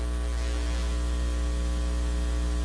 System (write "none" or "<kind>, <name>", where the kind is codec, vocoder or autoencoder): none